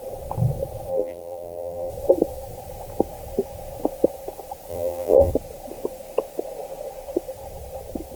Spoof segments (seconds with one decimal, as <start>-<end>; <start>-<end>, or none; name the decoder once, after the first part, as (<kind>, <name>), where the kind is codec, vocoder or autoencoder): 0.9-1.9 (vocoder, BigVGAN v2); 4.7-5.3